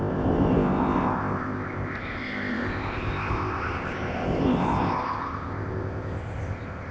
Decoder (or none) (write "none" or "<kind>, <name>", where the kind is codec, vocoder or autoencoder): codec, ZipCodec